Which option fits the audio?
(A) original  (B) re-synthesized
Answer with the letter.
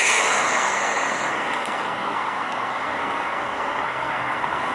B